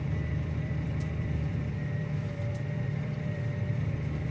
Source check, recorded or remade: remade